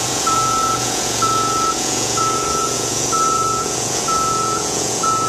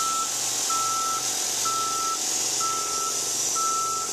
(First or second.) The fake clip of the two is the first